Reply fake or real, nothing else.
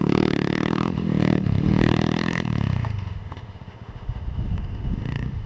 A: fake